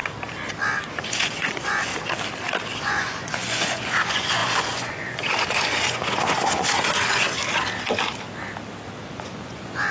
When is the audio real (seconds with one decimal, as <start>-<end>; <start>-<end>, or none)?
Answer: 0.0-0.9; 1.9-2.8; 7.4-9.0